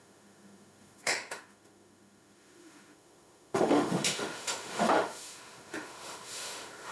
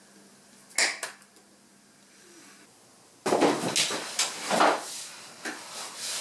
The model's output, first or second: first